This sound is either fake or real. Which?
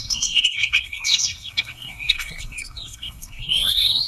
fake